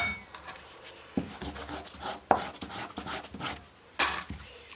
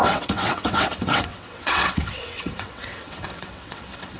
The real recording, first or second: first